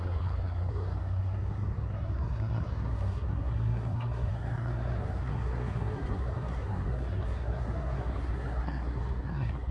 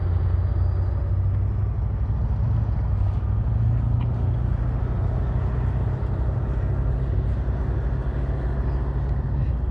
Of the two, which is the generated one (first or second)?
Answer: first